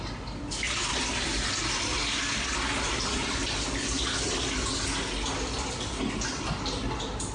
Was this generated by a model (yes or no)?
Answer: no